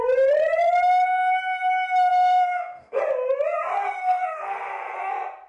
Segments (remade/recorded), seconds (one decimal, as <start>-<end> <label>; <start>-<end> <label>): 0.0-2.1 recorded; 2.1-3.0 remade; 3.0-4.0 recorded; 4.0-5.1 remade; 5.1-5.5 recorded